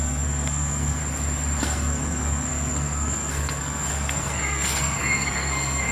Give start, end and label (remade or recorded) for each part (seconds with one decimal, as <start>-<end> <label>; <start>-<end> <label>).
0.0-1.0 remade; 1.0-1.6 recorded; 1.6-5.9 remade